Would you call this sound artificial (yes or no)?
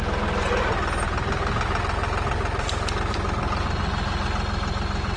no